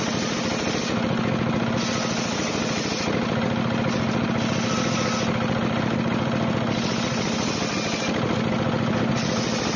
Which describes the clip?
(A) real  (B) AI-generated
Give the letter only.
A